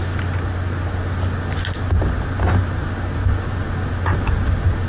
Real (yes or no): yes